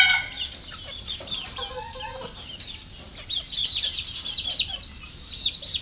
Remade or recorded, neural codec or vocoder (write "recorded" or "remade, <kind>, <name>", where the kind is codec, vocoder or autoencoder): recorded